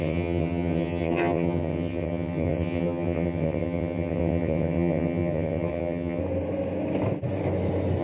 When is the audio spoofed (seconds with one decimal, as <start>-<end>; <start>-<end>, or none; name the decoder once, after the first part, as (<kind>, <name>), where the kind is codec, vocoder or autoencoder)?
0.0-6.2 (vocoder, HiFi-GAN)